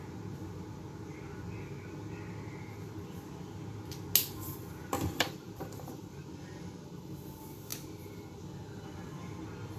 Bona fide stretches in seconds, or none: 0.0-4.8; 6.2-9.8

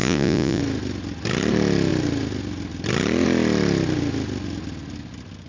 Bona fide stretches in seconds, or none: 0.6-5.5

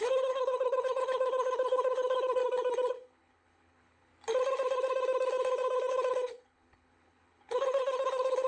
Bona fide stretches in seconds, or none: 2.4-2.9; 4.1-5.9

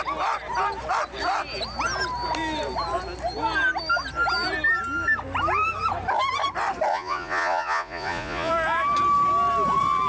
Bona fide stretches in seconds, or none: 0.0-6.9; 8.5-10.1

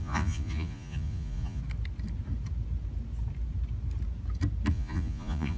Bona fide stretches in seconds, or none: 1.6-4.7